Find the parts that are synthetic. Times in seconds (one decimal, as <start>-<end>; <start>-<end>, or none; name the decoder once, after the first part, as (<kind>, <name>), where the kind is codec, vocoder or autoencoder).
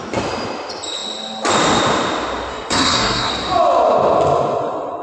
2.5-3.3 (codec, SNAC)